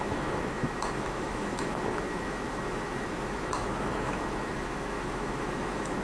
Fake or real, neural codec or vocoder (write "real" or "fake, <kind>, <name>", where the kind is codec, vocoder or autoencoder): fake, autoencoder, DAC-VAE